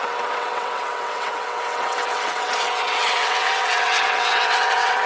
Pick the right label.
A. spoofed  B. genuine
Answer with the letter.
A